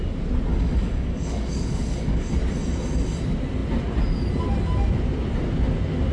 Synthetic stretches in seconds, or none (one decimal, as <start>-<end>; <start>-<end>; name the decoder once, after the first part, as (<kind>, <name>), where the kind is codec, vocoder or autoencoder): 0.5-2.3 (codec, DAC)